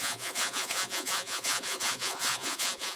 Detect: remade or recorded remade